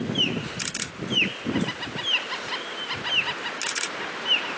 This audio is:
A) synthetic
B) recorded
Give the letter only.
B